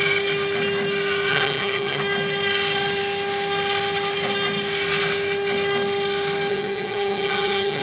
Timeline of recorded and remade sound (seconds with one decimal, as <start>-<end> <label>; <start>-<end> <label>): 0.0-1.3 recorded; 1.3-2.0 remade; 2.0-6.5 recorded; 6.5-7.8 remade

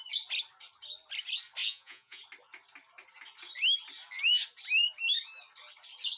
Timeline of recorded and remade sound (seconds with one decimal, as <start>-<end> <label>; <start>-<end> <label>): 0.0-1.6 recorded; 1.6-2.2 remade; 2.2-6.2 recorded

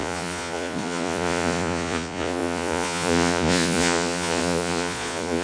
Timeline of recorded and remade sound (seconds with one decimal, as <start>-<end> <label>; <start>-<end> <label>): 0.0-5.4 remade

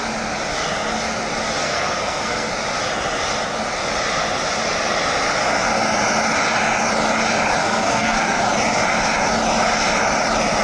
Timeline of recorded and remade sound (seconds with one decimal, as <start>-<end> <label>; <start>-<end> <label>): 0.0-1.6 recorded; 1.6-2.5 remade; 2.5-7.6 recorded; 7.6-8.4 remade; 8.4-10.6 recorded

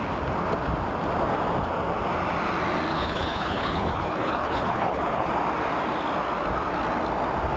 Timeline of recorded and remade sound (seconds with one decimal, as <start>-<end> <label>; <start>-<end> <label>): 0.0-2.9 recorded; 2.9-5.3 remade; 5.3-7.6 recorded

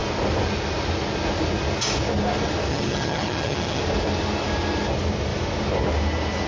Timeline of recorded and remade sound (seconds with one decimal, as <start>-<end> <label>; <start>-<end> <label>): 0.0-2.7 recorded; 2.7-3.8 remade; 3.8-6.5 recorded